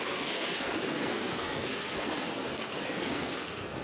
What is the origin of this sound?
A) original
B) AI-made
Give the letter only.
B